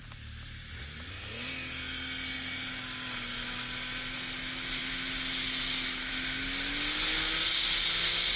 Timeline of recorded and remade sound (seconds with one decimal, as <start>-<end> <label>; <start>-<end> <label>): 0.0-8.4 recorded

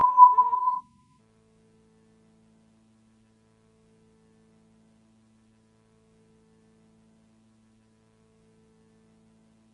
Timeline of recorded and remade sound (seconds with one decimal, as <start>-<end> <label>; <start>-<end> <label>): 0.0-1.2 remade; 1.2-9.7 recorded

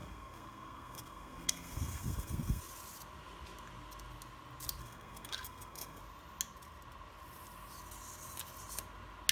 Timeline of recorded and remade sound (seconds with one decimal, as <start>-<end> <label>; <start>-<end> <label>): 0.0-2.6 remade; 2.6-4.8 recorded; 4.8-6.0 remade; 6.0-9.3 recorded

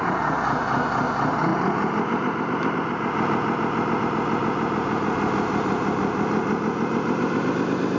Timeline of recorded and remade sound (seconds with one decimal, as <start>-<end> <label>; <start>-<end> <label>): 0.0-1.5 recorded; 1.5-4.0 remade; 4.0-4.4 recorded; 4.4-7.5 remade; 7.5-8.0 recorded

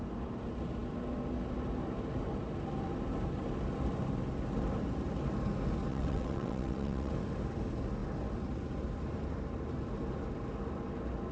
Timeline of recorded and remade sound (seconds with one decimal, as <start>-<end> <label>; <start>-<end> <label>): 0.0-5.9 recorded; 5.9-7.1 remade; 7.1-11.3 recorded

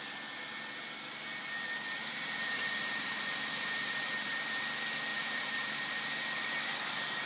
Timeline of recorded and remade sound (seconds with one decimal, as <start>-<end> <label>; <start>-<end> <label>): 0.0-2.0 recorded; 2.0-4.3 remade; 4.3-5.1 recorded; 5.1-5.8 remade; 5.8-7.3 recorded